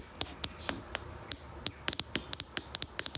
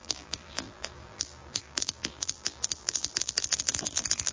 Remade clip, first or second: second